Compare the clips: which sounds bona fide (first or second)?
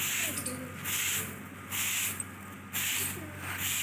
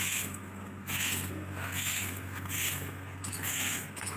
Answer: first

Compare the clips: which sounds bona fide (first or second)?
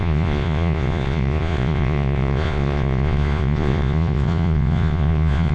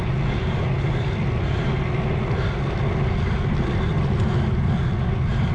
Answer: second